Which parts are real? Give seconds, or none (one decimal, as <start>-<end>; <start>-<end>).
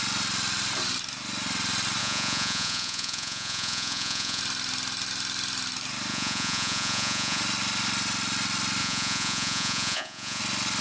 0.0-2.0; 4.4-6.1; 7.4-8.8; 10.4-10.8